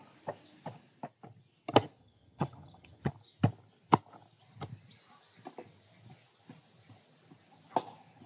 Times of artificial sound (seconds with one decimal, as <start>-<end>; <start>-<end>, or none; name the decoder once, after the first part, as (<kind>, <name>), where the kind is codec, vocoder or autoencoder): 2.0-3.1 (vocoder, HiFi-GAN)